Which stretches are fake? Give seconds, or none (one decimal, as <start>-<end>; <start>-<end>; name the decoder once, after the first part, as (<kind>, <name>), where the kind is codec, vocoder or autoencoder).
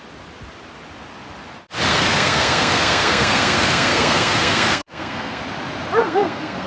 1.9-5.4 (codec, SNAC); 6.0-6.7